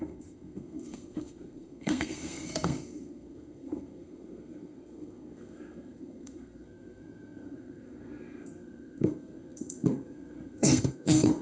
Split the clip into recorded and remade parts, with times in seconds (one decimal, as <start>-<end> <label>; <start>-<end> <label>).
0.0-11.4 remade